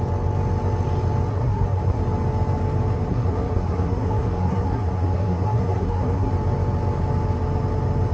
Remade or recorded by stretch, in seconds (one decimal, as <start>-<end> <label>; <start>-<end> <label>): 0.0-1.3 recorded; 1.3-2.0 remade; 2.0-3.1 recorded; 3.1-6.3 remade; 6.3-8.1 recorded